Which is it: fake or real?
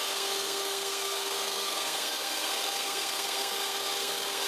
fake